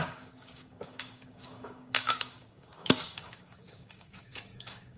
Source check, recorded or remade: remade